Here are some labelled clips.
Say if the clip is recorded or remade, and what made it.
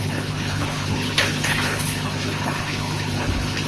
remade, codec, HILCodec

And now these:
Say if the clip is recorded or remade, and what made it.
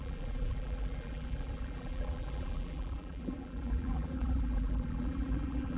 remade, vocoder, BigVGAN v2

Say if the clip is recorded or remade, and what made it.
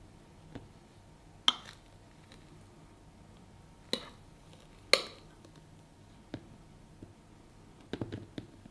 recorded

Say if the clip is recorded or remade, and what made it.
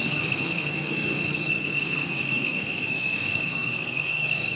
remade, codec, SNAC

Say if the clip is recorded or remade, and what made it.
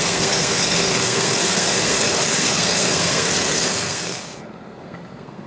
remade, codec, SNAC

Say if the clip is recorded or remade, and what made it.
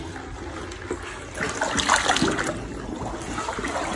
recorded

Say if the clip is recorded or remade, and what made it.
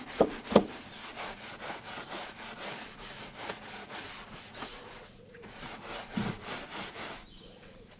remade, vocoder, Vocos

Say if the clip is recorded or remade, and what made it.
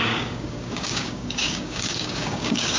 remade, codec, DAC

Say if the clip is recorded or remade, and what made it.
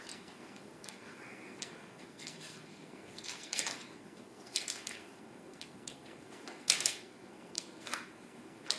remade, codec, SNAC